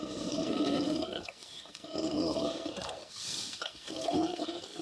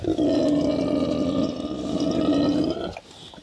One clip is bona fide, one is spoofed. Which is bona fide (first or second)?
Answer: second